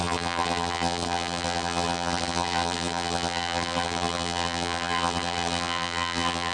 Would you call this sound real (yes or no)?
no